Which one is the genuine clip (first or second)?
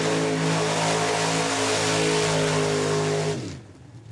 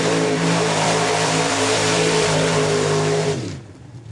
first